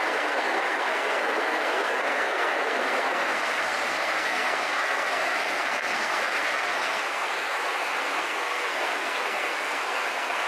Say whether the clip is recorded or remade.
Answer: remade